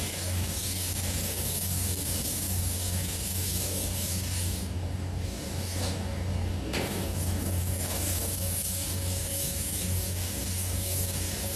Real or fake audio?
fake